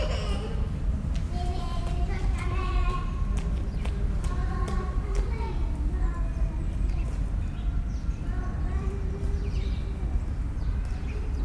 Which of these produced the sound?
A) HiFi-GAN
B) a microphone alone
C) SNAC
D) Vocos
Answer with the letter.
B